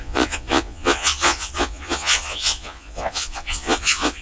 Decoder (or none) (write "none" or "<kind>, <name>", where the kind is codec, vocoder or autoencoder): vocoder, Vocos